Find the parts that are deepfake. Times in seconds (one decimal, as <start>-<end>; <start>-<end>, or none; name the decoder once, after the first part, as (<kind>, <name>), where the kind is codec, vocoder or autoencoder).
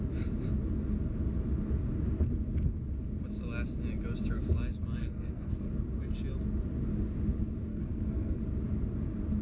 5.0-5.7 (codec, SNAC); 7.7-8.4